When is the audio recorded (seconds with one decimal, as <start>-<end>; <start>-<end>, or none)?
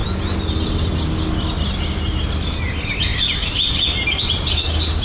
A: 0.0-5.0